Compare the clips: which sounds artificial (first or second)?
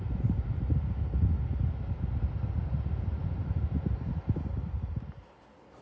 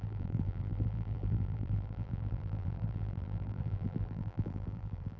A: second